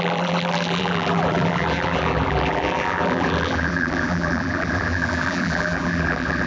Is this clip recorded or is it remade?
remade